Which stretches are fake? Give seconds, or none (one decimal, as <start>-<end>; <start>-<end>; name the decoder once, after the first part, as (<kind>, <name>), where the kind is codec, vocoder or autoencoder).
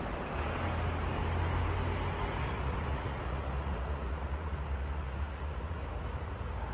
2.4-5.8 (vocoder, Vocos)